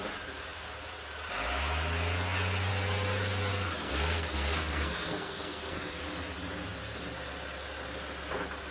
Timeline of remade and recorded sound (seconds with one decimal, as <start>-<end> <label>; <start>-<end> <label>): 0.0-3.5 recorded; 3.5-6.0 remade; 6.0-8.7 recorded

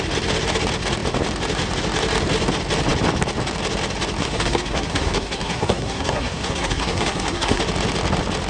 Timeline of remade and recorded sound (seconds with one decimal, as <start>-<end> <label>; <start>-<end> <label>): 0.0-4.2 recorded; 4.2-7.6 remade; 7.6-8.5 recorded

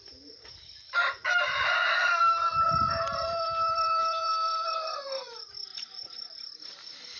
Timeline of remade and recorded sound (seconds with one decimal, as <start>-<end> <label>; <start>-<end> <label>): 0.0-7.2 remade